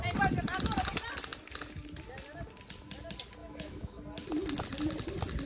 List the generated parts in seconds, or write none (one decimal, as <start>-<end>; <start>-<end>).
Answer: 3.4-4.0